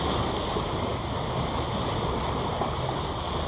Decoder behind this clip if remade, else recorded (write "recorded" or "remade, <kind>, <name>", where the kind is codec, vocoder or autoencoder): recorded